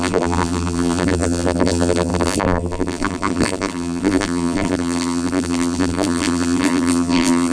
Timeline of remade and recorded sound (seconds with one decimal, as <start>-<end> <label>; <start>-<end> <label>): 0.0-7.5 remade